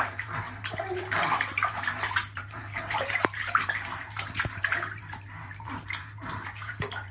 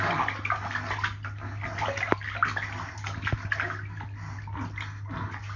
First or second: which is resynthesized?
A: first